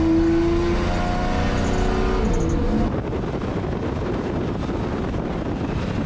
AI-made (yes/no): no